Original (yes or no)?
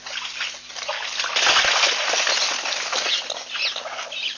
yes